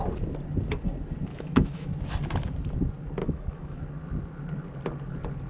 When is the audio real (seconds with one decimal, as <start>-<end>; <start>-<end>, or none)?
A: 0.0-1.3; 1.9-3.2; 3.8-5.5